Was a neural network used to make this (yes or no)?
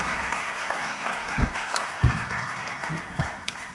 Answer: yes